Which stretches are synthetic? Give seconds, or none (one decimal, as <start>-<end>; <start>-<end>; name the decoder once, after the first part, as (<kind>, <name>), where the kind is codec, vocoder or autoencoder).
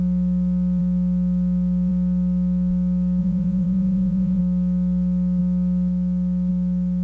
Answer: 3.2-4.4 (vocoder, Vocos)